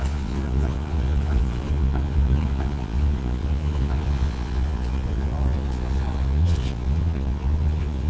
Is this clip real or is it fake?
fake